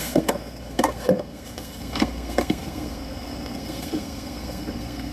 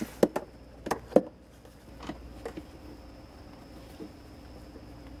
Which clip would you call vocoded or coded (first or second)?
first